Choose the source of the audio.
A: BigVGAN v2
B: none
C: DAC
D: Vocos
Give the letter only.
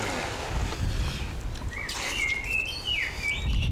B